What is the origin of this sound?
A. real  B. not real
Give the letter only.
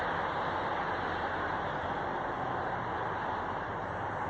A